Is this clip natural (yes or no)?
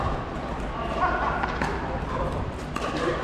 yes